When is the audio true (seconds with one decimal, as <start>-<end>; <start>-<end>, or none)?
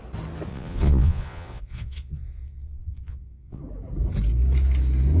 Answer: 0.0-0.5; 3.6-5.2